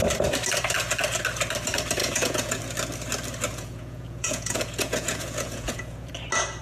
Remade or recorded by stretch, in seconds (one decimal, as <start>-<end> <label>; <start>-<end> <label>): 0.0-2.0 recorded; 2.0-2.6 remade; 2.6-3.5 recorded; 3.5-6.1 remade; 6.1-6.6 recorded